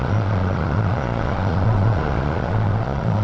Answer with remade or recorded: remade